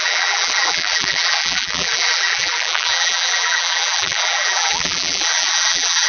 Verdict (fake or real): fake